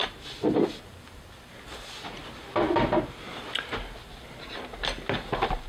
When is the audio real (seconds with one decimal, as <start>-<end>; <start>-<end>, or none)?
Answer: 0.0-5.7